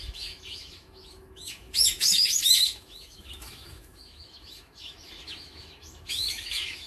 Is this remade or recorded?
remade